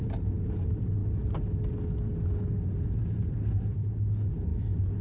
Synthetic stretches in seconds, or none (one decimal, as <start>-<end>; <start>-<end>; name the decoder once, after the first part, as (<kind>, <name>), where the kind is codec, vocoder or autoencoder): 0.0-1.0 (vocoder, BigVGAN v2); 2.9-5.0